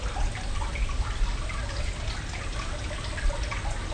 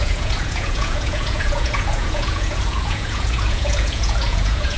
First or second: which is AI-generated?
second